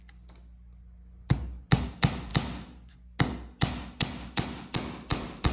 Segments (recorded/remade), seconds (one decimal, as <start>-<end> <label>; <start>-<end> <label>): 0.0-5.5 recorded